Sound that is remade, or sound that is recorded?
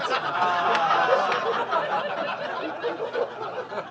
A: recorded